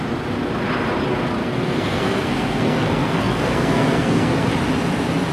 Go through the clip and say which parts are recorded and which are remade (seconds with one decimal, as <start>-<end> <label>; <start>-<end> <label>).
0.0-1.4 recorded; 1.4-4.5 remade; 4.5-5.3 recorded

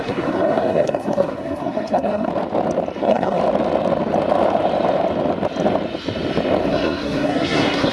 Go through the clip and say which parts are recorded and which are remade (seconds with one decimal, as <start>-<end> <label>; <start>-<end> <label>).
0.0-2.3 remade; 2.3-3.0 recorded; 3.0-3.4 remade; 3.4-6.7 recorded; 6.7-7.9 remade

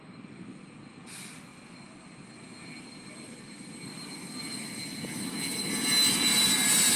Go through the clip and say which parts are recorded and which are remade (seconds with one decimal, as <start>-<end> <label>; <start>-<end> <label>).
0.0-7.0 recorded